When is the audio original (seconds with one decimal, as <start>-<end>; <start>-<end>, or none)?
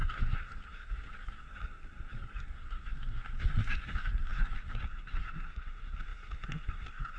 none